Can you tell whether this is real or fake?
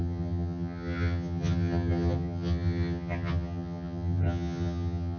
fake